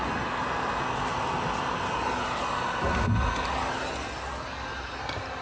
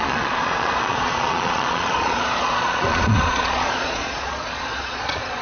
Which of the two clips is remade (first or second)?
second